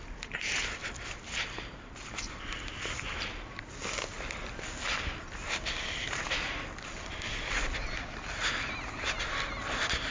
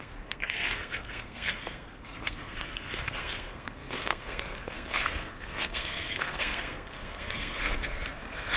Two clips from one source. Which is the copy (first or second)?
second